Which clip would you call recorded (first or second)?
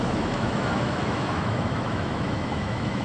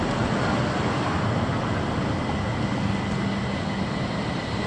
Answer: second